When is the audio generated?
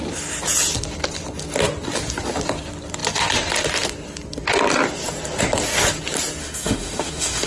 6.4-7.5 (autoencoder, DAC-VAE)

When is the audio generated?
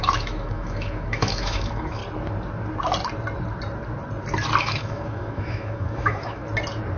0.0-2.0 (autoencoder, DAC-VAE); 4.6-6.4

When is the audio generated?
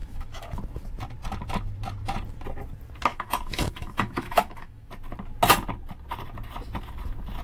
0.0-0.5 (autoencoder, DAC-VAE); 3.1-4.9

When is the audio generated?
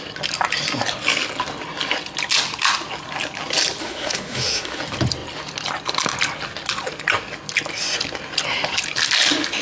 3.8-4.8 (autoencoder, DAC-VAE)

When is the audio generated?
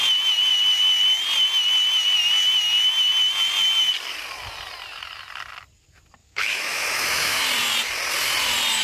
6.2-7.4 (autoencoder, DAC-VAE)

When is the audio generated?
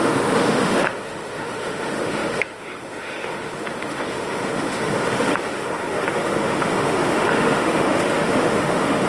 0.0-9.1 (autoencoder, DAC-VAE)